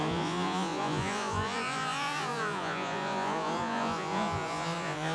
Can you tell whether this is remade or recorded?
remade